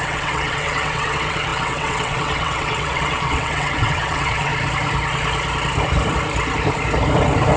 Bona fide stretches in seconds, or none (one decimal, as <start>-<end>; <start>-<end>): 4.5-7.6